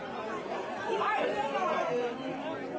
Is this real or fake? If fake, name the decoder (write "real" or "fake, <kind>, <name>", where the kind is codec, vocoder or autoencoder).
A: real